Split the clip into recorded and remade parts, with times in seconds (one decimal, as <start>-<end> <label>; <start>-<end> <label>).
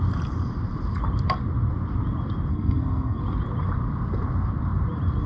0.0-2.5 recorded; 2.5-3.2 remade; 3.2-5.3 recorded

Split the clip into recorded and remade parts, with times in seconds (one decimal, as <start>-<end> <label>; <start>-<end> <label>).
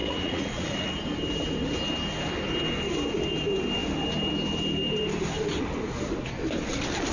0.0-0.9 remade; 0.9-7.1 recorded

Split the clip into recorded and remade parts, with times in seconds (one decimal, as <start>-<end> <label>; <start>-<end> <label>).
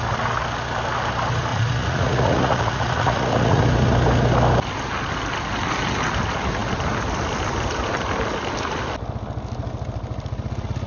0.0-1.5 recorded; 1.5-3.6 remade; 3.6-10.9 recorded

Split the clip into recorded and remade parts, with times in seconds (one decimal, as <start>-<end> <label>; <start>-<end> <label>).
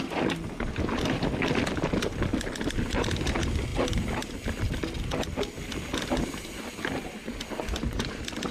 0.0-8.5 recorded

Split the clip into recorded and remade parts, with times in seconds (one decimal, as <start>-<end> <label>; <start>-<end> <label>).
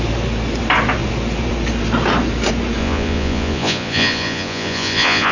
0.0-2.8 recorded; 2.8-5.3 remade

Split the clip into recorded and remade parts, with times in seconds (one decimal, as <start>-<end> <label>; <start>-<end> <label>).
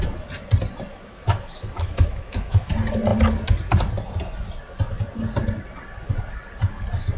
0.0-0.9 recorded; 0.9-2.7 remade; 2.7-7.2 recorded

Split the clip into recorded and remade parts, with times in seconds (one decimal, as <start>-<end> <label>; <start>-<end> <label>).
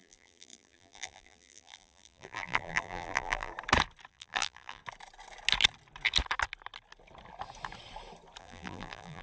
0.0-3.5 remade; 3.5-4.1 recorded; 4.1-4.8 remade; 4.8-8.4 recorded; 8.4-9.2 remade